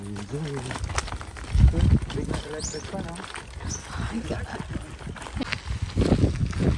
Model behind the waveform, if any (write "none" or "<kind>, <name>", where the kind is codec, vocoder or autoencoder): none